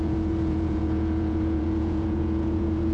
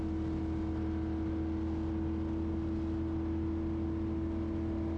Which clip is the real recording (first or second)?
second